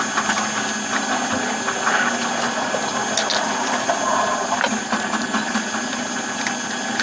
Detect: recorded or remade recorded